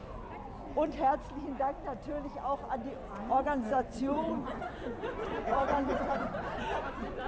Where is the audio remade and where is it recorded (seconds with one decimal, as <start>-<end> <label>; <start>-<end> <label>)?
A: 0.0-3.3 recorded; 3.3-7.3 remade